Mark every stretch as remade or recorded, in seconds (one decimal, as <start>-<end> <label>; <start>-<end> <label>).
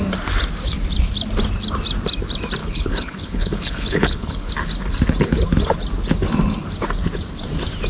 0.0-2.6 recorded; 2.6-4.5 remade; 4.5-7.9 recorded